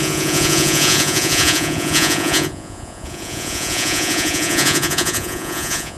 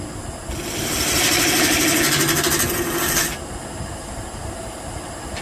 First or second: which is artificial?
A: first